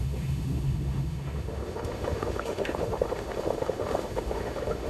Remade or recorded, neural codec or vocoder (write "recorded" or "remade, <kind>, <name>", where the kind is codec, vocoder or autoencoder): remade, autoencoder, DAC-VAE